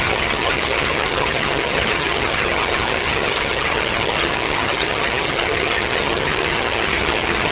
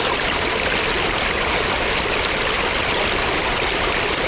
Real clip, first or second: second